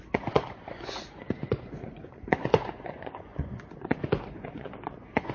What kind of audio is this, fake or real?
fake